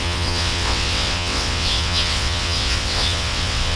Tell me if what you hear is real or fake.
fake